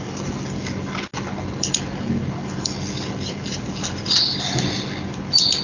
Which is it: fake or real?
real